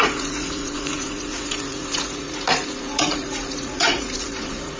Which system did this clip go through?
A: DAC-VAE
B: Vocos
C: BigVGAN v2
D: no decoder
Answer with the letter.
B